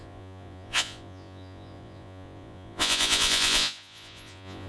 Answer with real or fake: fake